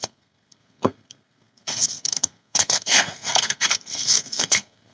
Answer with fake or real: fake